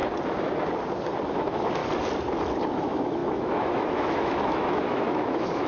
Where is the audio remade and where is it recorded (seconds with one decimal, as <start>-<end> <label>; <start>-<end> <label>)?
0.0-1.3 recorded; 1.3-1.8 remade; 1.8-2.7 recorded; 2.7-5.7 remade